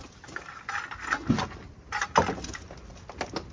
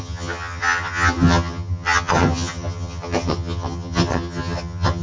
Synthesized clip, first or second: second